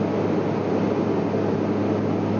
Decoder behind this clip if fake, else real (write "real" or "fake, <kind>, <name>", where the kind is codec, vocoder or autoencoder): real